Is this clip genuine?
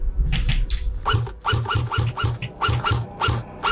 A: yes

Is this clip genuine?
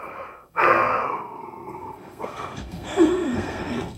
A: no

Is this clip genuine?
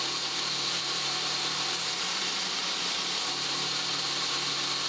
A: yes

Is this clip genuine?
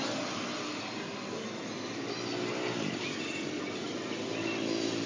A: yes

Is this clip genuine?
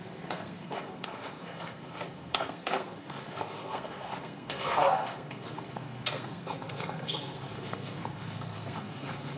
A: no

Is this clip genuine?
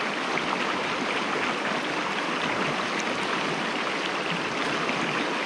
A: yes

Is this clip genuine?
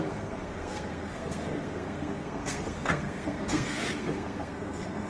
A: no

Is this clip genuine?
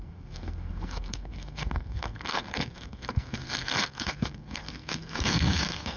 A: no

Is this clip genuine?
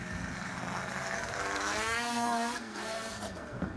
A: no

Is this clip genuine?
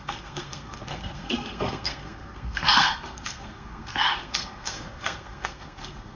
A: no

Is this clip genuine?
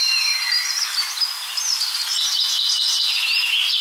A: yes